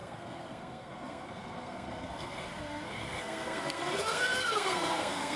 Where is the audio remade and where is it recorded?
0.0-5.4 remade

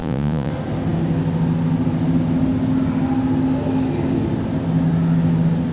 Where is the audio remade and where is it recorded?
0.0-0.5 remade; 0.5-5.7 recorded

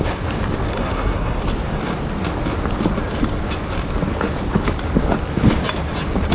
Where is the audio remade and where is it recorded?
0.0-0.7 recorded; 0.7-1.4 remade; 1.4-6.3 recorded

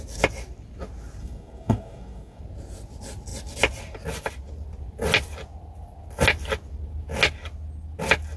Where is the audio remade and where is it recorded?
0.0-1.2 recorded; 1.2-2.4 remade; 2.4-8.4 recorded